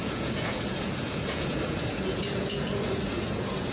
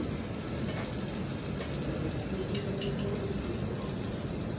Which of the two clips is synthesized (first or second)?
first